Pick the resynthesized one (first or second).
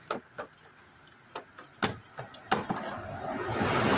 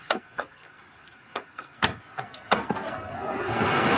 second